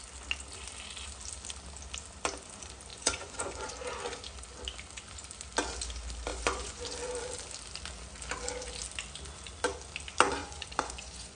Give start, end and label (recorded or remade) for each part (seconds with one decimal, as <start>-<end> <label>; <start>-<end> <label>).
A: 0.0-2.9 recorded; 2.9-3.7 remade; 3.7-6.3 recorded; 6.3-6.8 remade; 6.8-10.4 recorded; 10.4-11.4 remade